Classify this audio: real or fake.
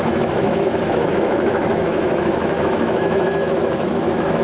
fake